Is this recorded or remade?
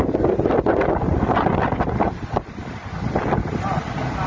recorded